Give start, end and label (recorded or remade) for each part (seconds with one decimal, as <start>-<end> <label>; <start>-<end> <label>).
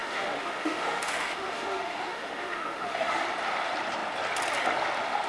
0.0-3.2 remade; 3.2-5.3 recorded